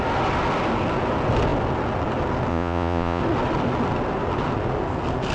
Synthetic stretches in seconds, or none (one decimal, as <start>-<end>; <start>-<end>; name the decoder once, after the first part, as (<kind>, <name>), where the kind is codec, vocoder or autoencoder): 2.5-3.2 (vocoder, Vocos)